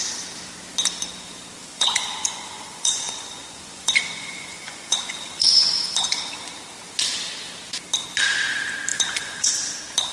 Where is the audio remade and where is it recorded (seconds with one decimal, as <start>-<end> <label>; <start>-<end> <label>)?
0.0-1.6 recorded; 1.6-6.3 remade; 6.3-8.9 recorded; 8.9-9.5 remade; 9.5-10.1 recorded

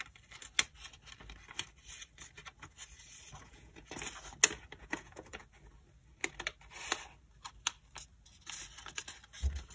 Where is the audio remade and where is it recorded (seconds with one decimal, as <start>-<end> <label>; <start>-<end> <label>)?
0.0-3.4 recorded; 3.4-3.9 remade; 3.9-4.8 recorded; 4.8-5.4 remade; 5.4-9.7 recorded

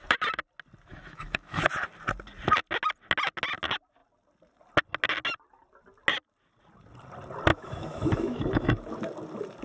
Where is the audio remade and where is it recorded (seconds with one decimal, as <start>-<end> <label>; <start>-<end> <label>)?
0.0-0.9 recorded; 0.9-1.7 remade; 1.7-7.5 recorded; 7.5-8.7 remade; 8.7-9.6 recorded

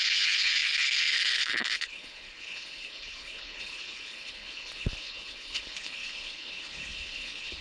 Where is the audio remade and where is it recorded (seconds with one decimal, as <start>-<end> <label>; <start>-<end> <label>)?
0.0-7.6 remade

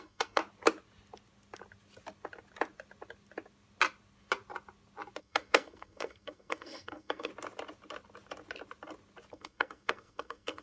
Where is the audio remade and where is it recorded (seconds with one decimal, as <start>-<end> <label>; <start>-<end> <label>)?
0.0-0.4 remade; 0.4-5.2 recorded; 5.2-7.3 remade; 7.3-9.3 recorded; 9.3-10.6 remade

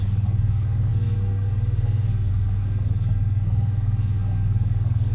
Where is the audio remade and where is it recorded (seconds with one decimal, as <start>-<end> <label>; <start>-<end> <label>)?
0.0-5.1 remade

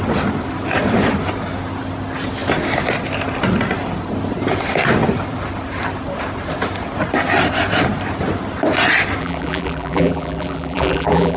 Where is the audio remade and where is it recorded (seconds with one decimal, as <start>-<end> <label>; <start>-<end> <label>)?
0.0-9.2 recorded; 9.2-11.4 remade